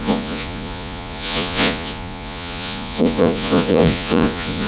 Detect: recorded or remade remade